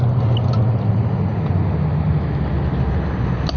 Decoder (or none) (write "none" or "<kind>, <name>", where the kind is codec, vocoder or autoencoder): none